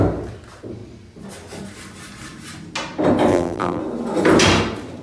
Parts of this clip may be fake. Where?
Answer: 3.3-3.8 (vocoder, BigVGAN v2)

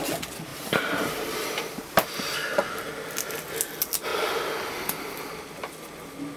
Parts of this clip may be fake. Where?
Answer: 0.5-2.9 (vocoder, BigVGAN v2)

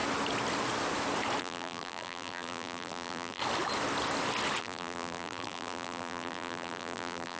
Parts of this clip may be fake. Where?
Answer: 1.4-3.4 (vocoder, BigVGAN v2); 4.6-7.4

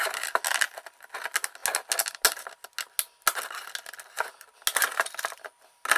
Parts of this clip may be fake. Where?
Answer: none

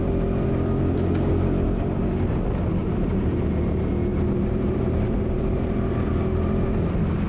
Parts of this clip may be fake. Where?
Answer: 2.8-3.5 (vocoder, BigVGAN v2); 4.1-6.1